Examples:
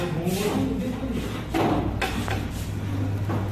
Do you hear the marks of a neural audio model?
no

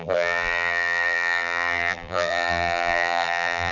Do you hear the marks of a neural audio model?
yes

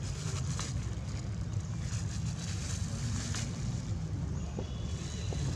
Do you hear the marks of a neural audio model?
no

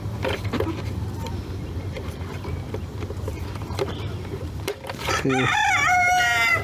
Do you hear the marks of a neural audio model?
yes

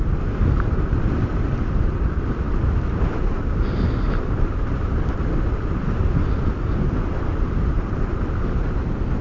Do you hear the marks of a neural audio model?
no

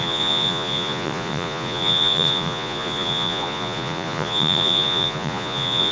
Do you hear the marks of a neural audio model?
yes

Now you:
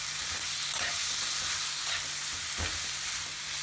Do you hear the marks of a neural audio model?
no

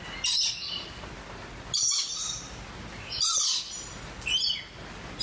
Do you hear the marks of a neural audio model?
no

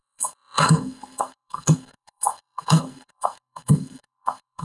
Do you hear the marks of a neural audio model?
yes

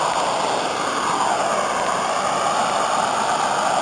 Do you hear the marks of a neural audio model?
no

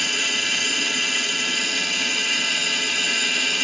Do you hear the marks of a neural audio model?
yes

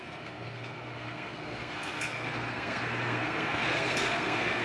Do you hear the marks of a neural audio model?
yes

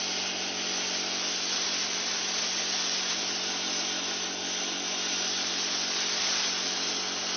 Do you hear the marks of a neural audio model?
no